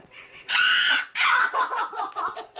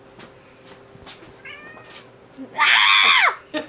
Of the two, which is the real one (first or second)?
second